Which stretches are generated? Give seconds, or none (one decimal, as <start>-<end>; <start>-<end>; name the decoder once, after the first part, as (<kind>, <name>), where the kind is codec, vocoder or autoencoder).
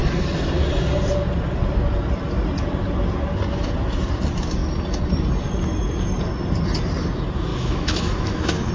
7.5-8.7 (autoencoder, DAC-VAE)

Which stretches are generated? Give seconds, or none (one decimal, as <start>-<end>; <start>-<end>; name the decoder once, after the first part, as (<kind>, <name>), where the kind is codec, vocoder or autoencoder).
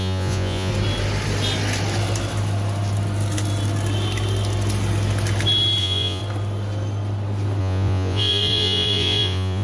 0.0-0.7 (vocoder, Vocos); 5.8-6.2; 7.6-9.6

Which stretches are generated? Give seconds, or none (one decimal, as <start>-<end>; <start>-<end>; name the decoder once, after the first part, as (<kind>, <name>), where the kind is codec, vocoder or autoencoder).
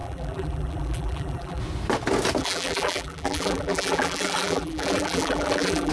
0.0-1.6 (vocoder, BigVGAN v2); 2.4-5.9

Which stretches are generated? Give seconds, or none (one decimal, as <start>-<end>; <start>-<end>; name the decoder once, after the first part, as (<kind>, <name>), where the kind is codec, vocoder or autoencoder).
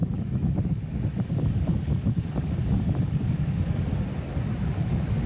0.0-3.9 (codec, DAC); 4.6-5.3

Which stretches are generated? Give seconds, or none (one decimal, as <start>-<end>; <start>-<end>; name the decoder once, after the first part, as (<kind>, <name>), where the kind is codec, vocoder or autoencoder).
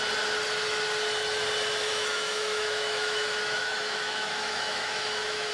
1.9-5.5 (autoencoder, DAC-VAE)